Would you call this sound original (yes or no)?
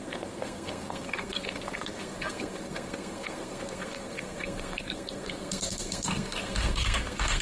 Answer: no